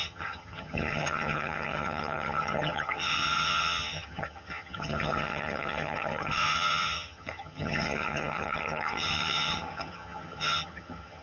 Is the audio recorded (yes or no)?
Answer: no